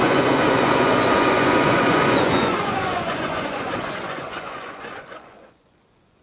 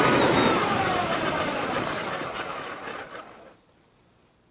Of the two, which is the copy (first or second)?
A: first